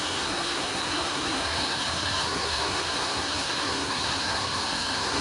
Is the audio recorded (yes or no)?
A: no